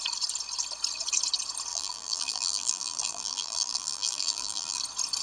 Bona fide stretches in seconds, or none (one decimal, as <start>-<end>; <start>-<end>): 0.0-1.7; 4.8-5.2